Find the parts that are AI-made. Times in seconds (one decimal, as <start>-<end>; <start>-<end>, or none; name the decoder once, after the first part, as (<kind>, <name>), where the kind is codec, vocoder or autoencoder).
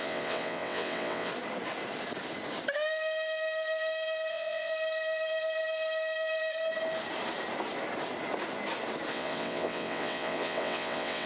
0.0-1.3 (vocoder, WaveNeXt); 4.3-4.7; 9.1-11.3